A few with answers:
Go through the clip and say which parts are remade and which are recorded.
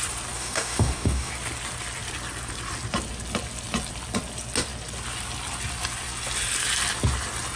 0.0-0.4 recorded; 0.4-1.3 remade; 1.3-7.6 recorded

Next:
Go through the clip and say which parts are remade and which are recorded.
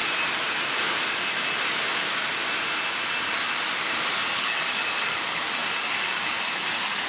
0.0-4.3 recorded; 4.3-7.1 remade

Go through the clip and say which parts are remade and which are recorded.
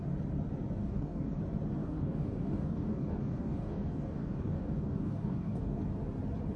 0.0-0.8 recorded; 0.8-1.4 remade; 1.4-1.8 recorded; 1.8-5.8 remade; 5.8-6.6 recorded